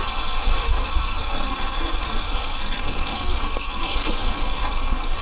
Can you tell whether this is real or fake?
fake